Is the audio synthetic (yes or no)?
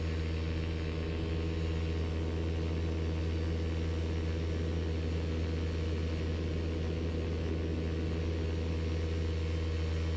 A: no